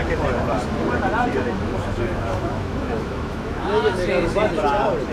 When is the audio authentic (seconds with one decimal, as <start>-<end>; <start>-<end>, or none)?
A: 0.0-1.3; 4.4-5.1